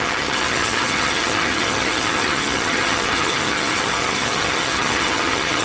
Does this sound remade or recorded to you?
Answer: remade